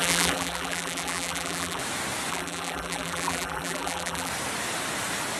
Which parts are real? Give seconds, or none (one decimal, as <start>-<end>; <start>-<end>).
1.8-2.3; 4.3-5.4